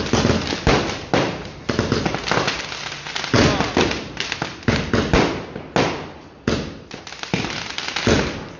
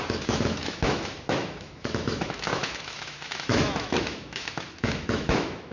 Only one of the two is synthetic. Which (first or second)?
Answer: second